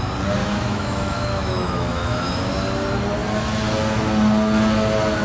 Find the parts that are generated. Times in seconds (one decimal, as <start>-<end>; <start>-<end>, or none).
0.4-2.5